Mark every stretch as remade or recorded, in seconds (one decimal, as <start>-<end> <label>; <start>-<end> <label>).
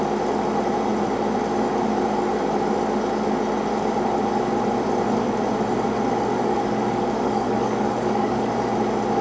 0.0-6.3 recorded; 6.3-8.5 remade; 8.5-9.2 recorded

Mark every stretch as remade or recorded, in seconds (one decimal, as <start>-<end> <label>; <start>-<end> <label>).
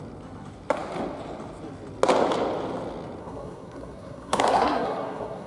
0.0-3.2 recorded; 3.2-5.5 remade